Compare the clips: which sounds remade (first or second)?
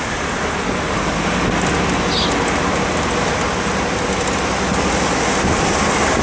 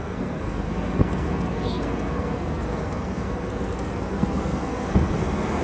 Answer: second